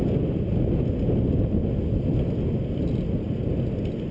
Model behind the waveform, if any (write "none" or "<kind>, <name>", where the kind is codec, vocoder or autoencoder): none